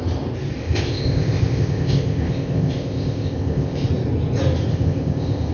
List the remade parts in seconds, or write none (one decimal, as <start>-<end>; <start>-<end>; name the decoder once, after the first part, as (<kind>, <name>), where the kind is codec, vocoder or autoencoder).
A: 0.6-3.9 (codec, ZipCodec); 4.7-5.5